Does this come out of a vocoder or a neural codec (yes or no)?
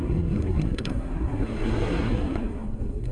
yes